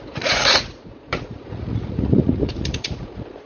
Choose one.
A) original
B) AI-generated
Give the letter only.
B